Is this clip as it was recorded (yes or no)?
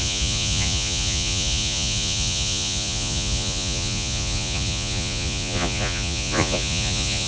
no